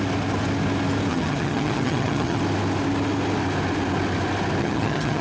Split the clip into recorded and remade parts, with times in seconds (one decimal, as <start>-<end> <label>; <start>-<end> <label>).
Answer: 0.0-1.1 recorded; 1.1-2.4 remade; 2.4-4.6 recorded; 4.6-5.2 remade